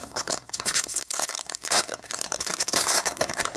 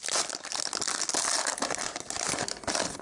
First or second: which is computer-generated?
first